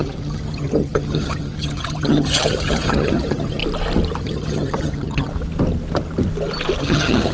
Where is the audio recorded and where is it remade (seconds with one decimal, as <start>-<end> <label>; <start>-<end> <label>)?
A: 0.0-3.6 remade; 3.6-4.2 recorded; 4.2-5.3 remade; 5.3-6.8 recorded; 6.8-7.3 remade